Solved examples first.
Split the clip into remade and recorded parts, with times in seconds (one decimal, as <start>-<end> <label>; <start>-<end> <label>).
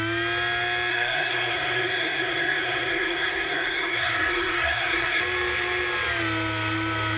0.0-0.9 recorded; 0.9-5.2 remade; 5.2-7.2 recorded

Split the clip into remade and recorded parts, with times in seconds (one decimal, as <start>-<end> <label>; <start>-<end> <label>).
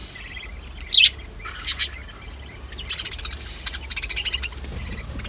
0.0-5.3 recorded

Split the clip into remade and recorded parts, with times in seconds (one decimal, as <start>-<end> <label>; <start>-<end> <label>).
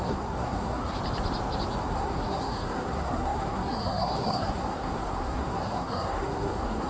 0.0-1.0 remade; 1.0-1.8 recorded; 1.8-6.9 remade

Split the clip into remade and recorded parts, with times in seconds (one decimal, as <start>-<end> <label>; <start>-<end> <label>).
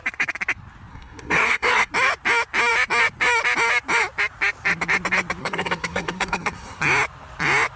0.0-0.9 recorded; 0.9-1.9 remade; 1.9-5.4 recorded; 5.4-6.8 remade; 6.8-7.8 recorded